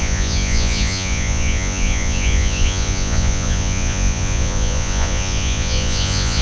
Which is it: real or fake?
fake